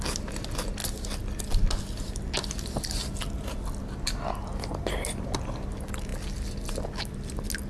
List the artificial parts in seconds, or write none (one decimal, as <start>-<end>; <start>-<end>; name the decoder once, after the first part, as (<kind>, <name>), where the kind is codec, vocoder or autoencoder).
none